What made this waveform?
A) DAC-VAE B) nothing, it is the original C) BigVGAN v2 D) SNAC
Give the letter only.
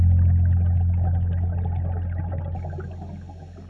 B